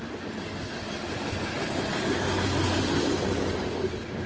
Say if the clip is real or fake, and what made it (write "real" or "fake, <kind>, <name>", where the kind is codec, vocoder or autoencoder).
real